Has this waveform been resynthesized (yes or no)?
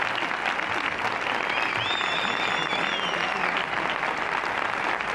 no